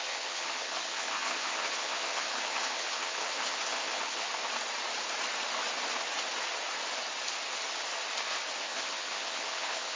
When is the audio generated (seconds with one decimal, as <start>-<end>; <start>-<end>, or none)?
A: 0.0-4.4; 8.6-10.0

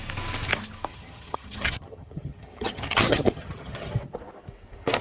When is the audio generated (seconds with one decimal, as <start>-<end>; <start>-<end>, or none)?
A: 0.9-3.9

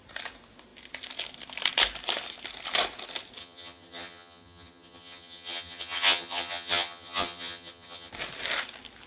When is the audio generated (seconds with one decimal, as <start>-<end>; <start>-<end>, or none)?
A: 3.4-8.1

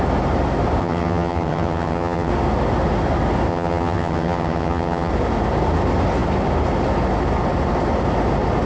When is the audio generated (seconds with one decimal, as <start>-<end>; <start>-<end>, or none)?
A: 0.8-2.3; 3.5-5.1

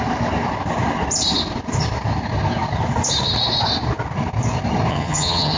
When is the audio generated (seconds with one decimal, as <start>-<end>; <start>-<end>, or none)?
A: 4.9-5.6

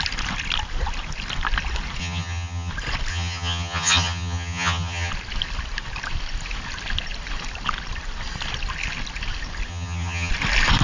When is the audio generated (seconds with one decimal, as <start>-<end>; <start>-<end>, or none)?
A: 2.0-2.7; 3.1-5.1; 9.7-10.3

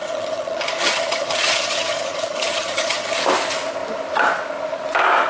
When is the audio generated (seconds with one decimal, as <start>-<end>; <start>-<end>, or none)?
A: 0.0-3.2